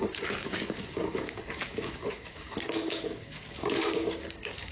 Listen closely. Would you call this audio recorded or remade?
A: remade